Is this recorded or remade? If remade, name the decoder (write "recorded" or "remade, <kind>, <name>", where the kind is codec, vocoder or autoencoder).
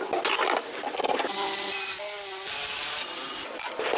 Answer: recorded